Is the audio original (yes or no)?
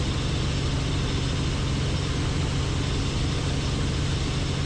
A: yes